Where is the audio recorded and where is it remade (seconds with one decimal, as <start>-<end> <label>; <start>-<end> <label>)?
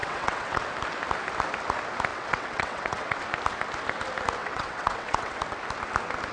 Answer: 0.0-0.6 remade; 0.6-2.1 recorded; 2.1-3.2 remade; 3.2-4.4 recorded; 4.4-5.4 remade; 5.4-6.3 recorded